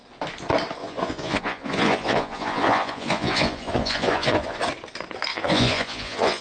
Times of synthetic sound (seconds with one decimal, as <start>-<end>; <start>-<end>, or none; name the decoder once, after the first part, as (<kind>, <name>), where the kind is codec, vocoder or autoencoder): 0.8-4.6 (vocoder, Vocos); 5.3-6.4